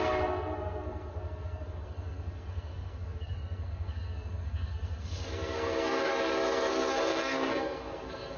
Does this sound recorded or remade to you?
remade